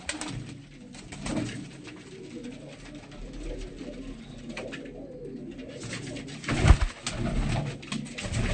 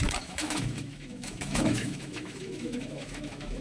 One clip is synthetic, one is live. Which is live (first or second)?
first